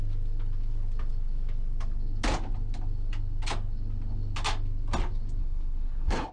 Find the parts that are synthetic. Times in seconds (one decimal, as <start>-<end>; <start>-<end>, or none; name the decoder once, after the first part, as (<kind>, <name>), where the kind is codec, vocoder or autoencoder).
5.4-6.3 (codec, SNAC)